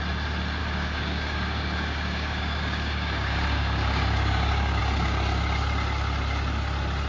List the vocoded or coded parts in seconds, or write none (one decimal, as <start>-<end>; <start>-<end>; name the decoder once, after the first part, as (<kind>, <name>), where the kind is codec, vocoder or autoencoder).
0.6-4.8 (codec, DAC)